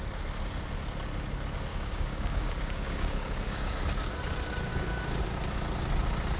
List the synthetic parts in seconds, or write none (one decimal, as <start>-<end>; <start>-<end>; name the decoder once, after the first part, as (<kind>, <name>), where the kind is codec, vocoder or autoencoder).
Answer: 1.7-3.8 (codec, DAC); 4.7-5.2